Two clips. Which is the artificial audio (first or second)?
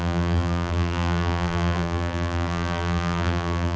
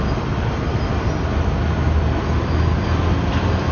first